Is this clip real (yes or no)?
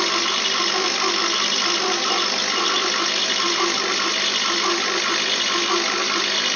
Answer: yes